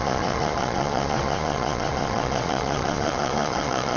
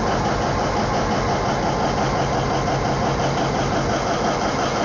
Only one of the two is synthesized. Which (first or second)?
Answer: first